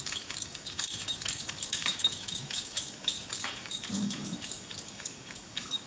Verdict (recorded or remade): remade